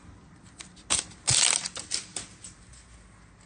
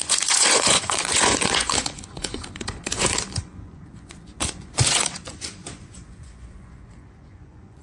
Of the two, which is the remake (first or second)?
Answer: second